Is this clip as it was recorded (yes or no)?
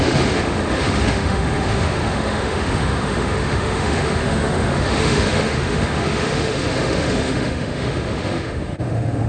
no